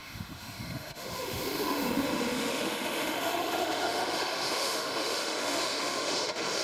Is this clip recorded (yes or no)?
no